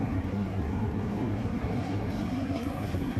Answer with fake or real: fake